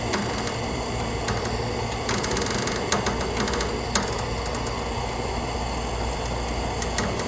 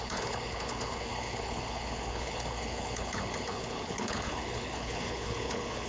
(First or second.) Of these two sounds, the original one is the first